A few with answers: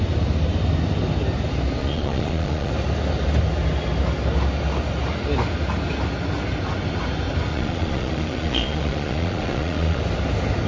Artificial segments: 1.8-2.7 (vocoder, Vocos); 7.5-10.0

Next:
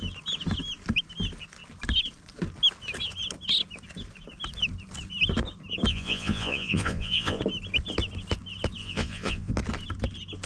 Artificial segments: 5.9-7.4 (vocoder, Vocos); 8.8-9.5

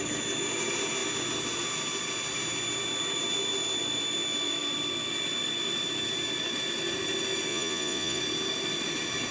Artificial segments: 7.5-8.2 (vocoder, Vocos)

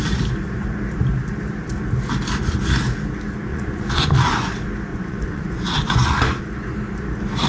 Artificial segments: 3.5-4.5 (vocoder, Vocos); 4.9-6.4

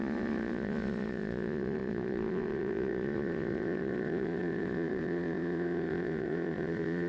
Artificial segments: 0.0-7.1 (vocoder, Vocos)

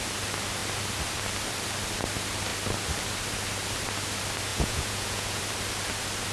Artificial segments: 4.5-5.4 (vocoder, Vocos)

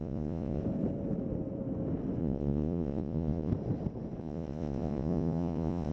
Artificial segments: 0.0-0.6 (vocoder, Vocos); 2.2-3.5; 4.2-5.9

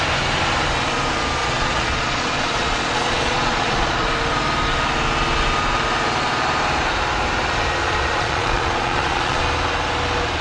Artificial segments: 1.4-4.1 (vocoder, Vocos); 7.8-9.4